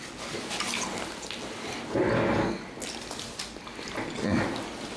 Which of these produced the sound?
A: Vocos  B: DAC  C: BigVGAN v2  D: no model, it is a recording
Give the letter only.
D